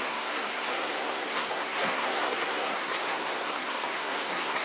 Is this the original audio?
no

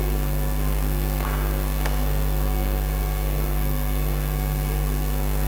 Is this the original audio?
no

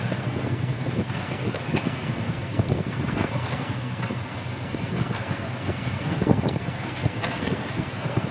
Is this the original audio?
no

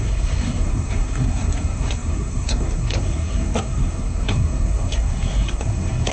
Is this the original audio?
no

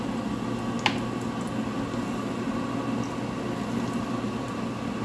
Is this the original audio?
yes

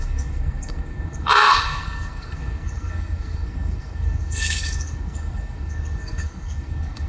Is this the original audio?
no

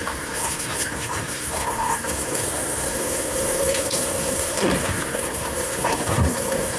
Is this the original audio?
no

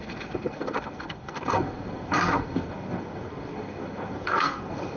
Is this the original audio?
no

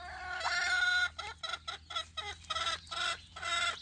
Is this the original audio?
yes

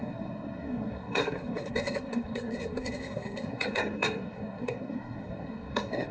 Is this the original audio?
no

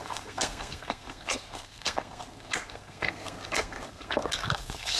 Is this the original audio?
no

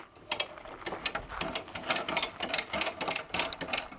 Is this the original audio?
yes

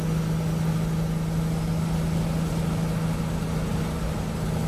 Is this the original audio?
yes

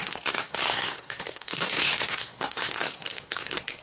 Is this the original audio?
no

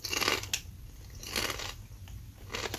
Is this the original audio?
yes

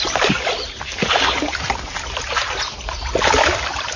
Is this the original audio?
yes